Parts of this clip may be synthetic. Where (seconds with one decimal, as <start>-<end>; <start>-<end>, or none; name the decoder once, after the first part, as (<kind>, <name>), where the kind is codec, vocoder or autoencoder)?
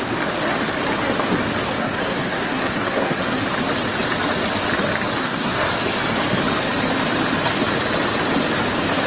1.8-3.4 (codec, SNAC); 5.2-5.7